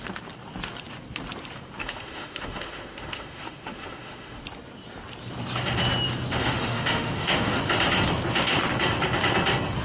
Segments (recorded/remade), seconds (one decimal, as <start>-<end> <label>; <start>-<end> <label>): 0.0-1.8 recorded; 1.8-4.4 remade; 4.4-6.4 recorded; 6.4-7.6 remade; 7.6-9.8 recorded